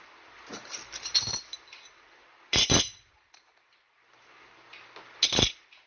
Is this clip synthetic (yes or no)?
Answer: no